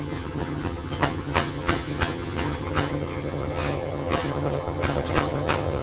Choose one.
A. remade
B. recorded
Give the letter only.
A